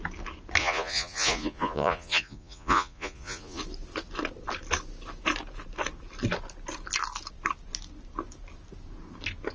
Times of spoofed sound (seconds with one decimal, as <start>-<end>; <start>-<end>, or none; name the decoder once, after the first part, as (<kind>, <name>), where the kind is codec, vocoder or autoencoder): 0.6-3.6 (vocoder, Vocos)